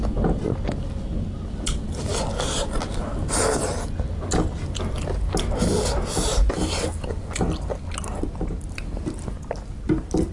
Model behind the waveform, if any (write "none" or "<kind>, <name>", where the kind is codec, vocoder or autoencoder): none